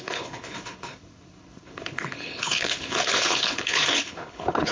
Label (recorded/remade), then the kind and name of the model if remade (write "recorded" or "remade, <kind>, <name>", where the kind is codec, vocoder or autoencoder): remade, codec, HILCodec